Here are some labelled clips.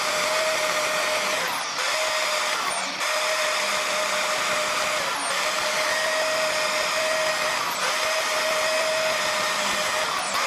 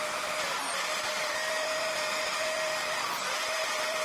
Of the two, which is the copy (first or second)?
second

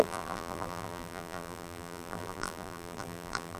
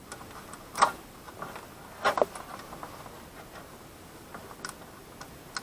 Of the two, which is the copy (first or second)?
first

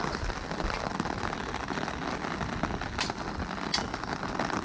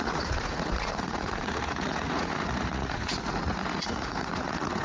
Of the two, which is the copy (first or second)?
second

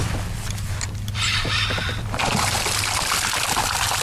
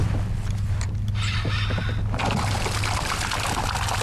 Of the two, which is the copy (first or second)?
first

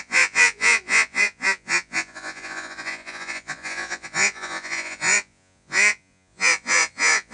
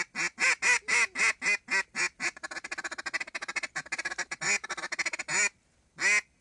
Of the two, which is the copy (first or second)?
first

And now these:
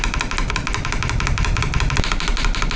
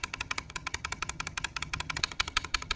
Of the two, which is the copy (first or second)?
second